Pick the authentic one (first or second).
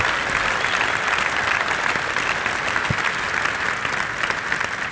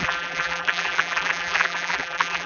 first